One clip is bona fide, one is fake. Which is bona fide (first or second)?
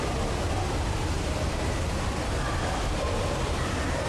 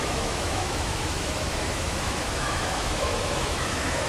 first